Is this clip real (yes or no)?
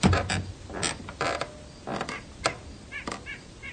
yes